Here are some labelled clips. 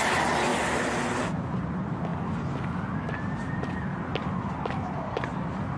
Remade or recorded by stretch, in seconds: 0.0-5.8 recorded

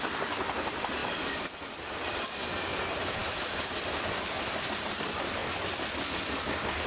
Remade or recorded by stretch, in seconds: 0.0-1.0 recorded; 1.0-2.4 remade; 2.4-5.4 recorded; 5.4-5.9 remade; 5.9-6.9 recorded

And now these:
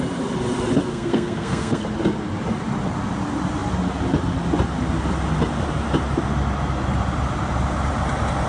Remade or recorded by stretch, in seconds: 0.0-0.9 recorded; 0.9-1.8 remade; 1.8-8.5 recorded

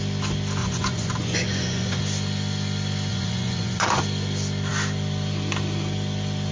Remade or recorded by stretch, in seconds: 0.0-0.6 recorded; 0.6-2.0 remade; 2.0-3.1 recorded; 3.1-4.0 remade; 4.0-6.5 recorded

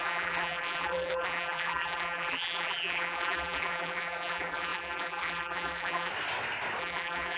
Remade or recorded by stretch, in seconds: 0.0-6.1 remade; 6.1-6.8 recorded; 6.8-7.4 remade

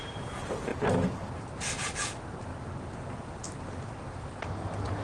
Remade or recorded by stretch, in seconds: 0.0-5.0 recorded

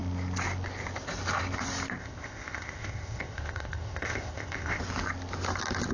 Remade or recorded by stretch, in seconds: 0.0-2.0 recorded; 2.0-4.8 remade; 4.8-5.9 recorded